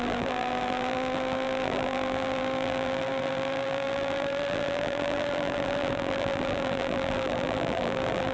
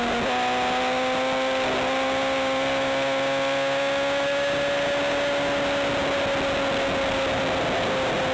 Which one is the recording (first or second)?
second